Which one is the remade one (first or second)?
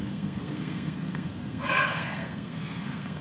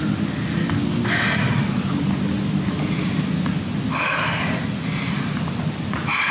first